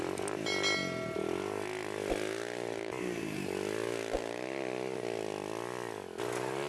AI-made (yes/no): no